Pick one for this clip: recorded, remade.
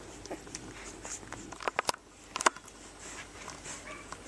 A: recorded